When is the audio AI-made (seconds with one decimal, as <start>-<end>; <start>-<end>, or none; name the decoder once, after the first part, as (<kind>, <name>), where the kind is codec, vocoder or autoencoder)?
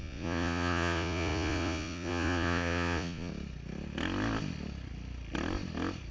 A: 0.0-3.3 (vocoder, Vocos)